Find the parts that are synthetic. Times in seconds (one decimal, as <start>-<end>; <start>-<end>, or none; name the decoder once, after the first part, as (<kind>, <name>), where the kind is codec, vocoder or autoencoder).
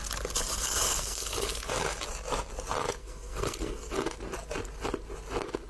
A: 0.5-1.7 (codec, SNAC); 3.0-3.9